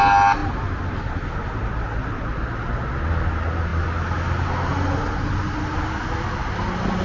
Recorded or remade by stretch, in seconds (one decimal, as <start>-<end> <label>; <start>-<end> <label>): 0.0-7.0 recorded

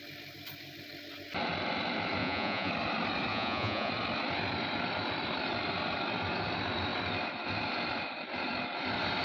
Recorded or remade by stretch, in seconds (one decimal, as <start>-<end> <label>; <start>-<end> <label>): 0.0-2.2 recorded; 2.2-2.7 remade; 2.7-3.3 recorded; 3.3-3.9 remade; 3.9-9.2 recorded

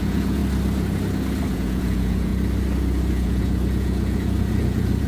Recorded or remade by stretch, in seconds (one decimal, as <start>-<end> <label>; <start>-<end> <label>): 0.0-0.4 remade; 0.4-1.5 recorded; 1.5-2.3 remade; 2.3-3.1 recorded; 3.1-5.1 remade